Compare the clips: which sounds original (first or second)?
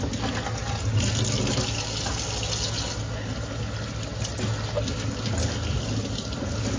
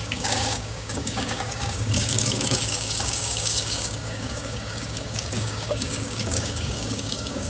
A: first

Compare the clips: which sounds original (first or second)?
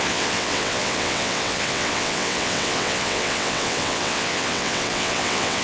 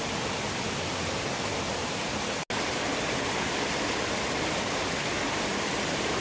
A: second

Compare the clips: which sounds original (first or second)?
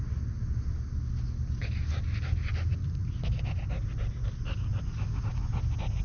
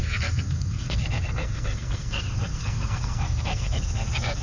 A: first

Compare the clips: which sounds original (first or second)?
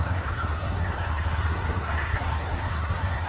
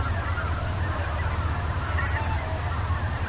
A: second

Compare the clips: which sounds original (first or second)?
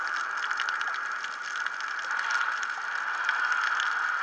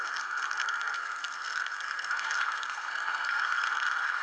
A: first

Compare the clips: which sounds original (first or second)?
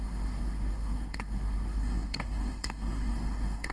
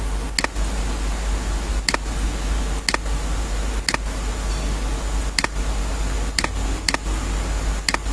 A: second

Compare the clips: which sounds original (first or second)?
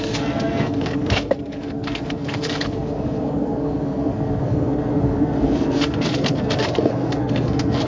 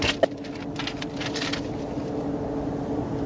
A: second